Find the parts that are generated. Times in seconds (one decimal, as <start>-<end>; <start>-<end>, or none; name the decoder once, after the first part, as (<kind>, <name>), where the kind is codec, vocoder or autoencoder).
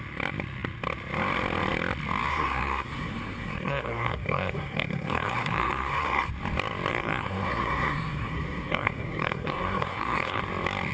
2.3-6.3 (codec, SNAC); 6.9-10.4